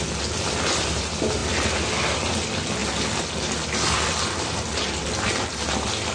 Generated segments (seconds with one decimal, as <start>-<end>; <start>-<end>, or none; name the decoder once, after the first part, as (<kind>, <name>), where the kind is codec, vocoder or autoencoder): none